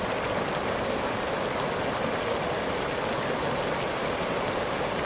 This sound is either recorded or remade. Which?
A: recorded